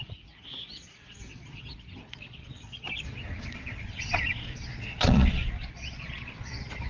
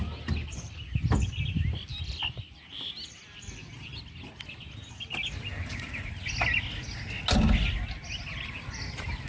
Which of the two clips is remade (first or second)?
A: first